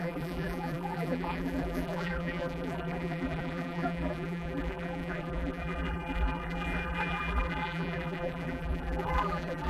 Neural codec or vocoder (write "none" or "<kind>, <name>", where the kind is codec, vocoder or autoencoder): vocoder, BigVGAN v2